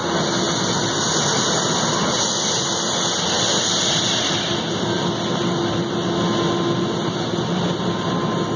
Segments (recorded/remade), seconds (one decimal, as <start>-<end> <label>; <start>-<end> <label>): 0.0-8.6 recorded